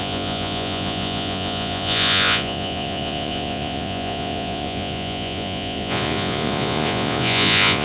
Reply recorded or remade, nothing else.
remade